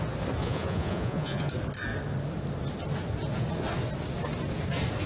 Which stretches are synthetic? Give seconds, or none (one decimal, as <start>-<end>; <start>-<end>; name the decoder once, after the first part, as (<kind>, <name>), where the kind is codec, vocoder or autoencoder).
0.4-1.5 (vocoder, Vocos)